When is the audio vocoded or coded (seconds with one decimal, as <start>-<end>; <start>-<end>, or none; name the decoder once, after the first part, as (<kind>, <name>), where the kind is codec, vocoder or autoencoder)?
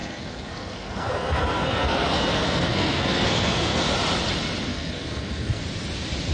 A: 0.0-3.8 (codec, SNAC); 4.7-5.6